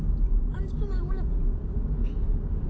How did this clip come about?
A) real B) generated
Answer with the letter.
A